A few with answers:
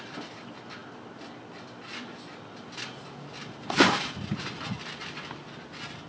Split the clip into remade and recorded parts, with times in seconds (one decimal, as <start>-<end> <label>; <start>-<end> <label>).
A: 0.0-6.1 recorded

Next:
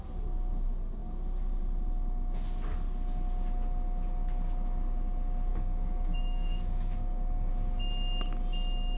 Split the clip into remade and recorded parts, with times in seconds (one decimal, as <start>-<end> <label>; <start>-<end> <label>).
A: 0.0-5.5 recorded; 5.5-7.5 remade; 7.5-9.0 recorded

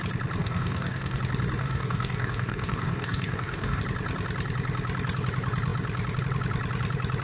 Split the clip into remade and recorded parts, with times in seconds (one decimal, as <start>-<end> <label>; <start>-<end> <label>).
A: 0.0-0.4 recorded; 0.4-1.2 remade; 1.2-1.6 recorded; 1.6-3.8 remade; 3.8-7.2 recorded